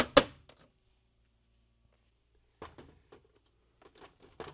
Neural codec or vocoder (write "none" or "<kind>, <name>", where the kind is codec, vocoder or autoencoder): none